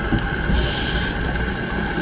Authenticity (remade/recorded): recorded